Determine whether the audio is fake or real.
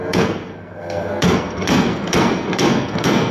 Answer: fake